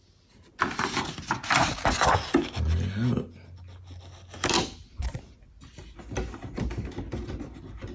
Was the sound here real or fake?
real